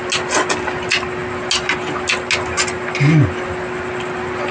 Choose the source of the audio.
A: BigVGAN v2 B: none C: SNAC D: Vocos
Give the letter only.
B